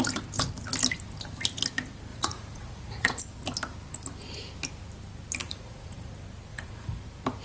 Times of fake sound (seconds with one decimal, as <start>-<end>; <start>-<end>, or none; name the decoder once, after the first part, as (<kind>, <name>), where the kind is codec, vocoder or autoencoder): 2.1-3.2 (vocoder, Vocos); 5.4-6.1; 6.5-7.0